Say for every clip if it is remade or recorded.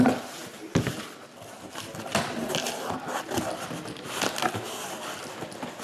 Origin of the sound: recorded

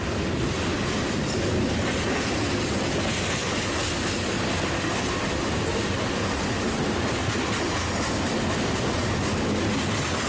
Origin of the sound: recorded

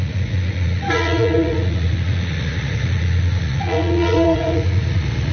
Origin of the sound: remade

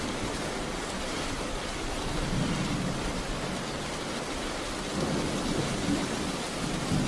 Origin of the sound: recorded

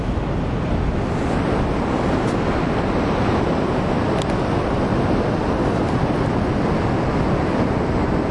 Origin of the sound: recorded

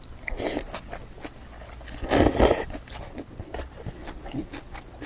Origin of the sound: recorded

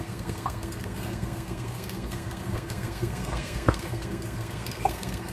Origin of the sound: remade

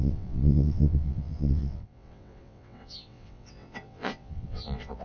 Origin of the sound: remade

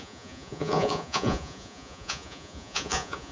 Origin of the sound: remade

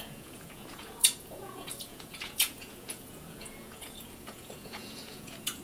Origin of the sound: remade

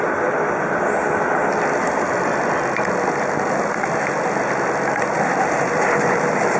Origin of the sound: recorded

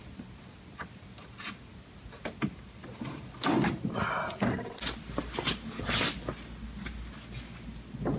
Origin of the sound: recorded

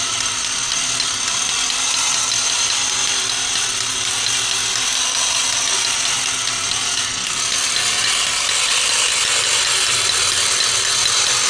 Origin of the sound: recorded